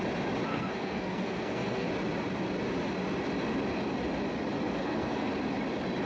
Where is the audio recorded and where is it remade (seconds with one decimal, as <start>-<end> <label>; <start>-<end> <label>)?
0.0-0.5 recorded; 0.5-1.9 remade; 1.9-4.8 recorded; 4.8-5.3 remade; 5.3-6.1 recorded